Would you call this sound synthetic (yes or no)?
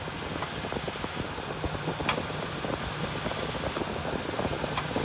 no